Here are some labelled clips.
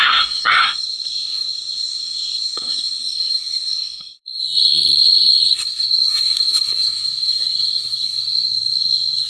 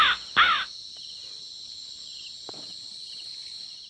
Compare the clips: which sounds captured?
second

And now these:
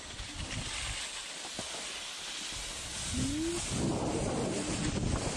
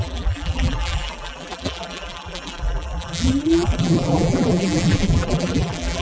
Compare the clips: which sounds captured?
first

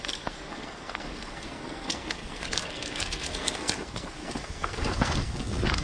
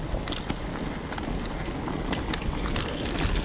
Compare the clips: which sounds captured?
second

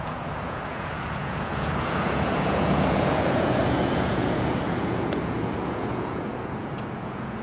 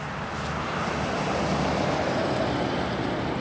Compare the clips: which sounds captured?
second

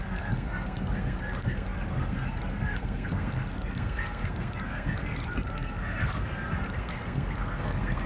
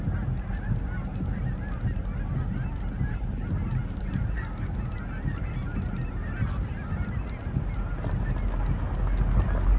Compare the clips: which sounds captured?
second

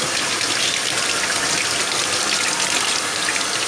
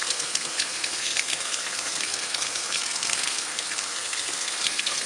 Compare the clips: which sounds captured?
first